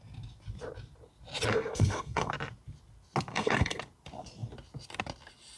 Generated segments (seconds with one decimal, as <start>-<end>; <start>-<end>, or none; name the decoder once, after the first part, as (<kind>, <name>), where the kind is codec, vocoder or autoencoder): 1.5-2.3 (codec, SNAC); 3.3-3.8